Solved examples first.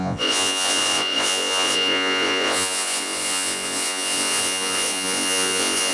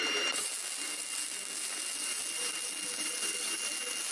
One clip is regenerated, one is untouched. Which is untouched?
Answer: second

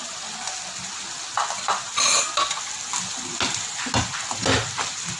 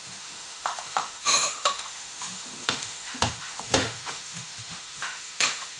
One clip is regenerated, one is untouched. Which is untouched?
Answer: first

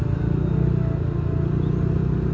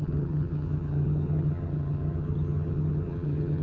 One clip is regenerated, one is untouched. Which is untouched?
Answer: first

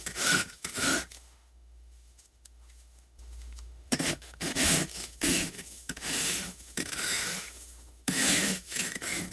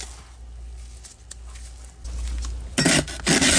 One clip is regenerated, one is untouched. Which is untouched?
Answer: second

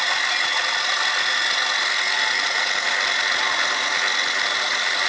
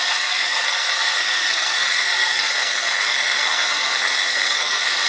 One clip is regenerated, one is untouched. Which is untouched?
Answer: first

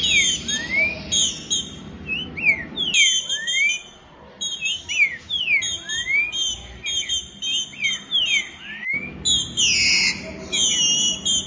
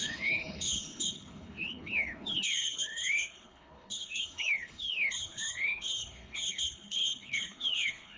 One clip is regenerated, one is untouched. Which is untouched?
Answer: first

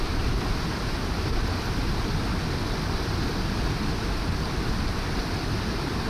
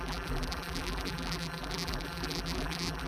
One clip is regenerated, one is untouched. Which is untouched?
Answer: first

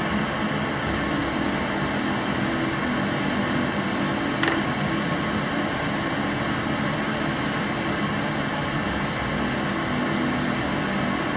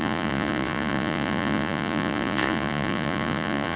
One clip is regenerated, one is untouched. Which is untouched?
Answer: first